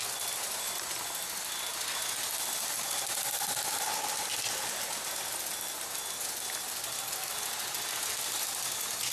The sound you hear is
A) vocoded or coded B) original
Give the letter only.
B